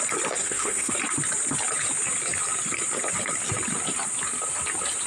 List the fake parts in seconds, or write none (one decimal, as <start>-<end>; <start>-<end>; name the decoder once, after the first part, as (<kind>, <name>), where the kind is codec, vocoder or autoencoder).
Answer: 0.4-0.9 (codec, SNAC)